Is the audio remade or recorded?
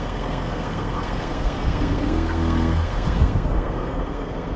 remade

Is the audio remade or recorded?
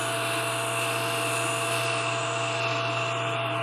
recorded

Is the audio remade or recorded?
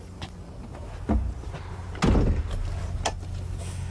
recorded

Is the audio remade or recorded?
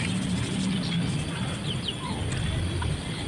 recorded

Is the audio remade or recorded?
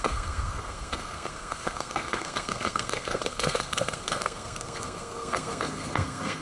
remade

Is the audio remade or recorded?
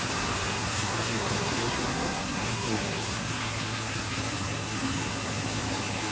remade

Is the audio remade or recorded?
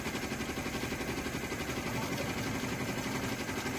recorded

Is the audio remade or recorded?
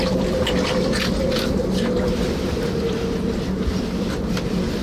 recorded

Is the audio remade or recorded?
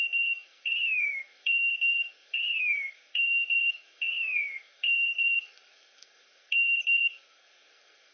remade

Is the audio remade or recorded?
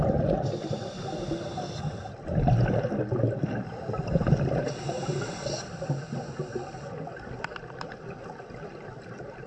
recorded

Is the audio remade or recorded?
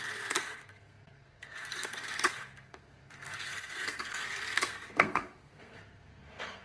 remade